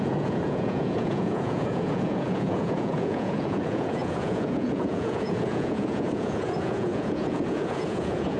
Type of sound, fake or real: fake